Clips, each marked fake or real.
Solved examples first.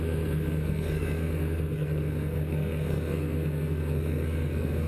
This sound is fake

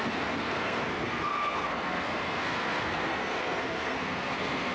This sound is fake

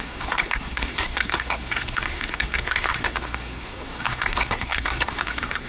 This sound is fake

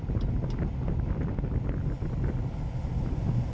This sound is real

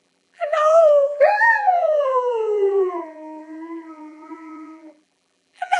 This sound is fake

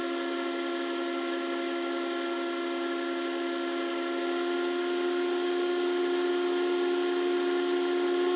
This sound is real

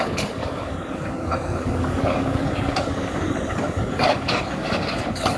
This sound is fake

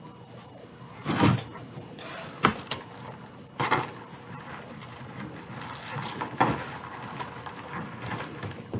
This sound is real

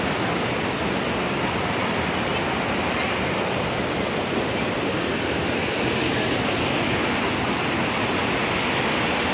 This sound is real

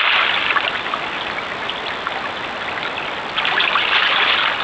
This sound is real